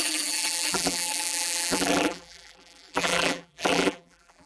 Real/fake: fake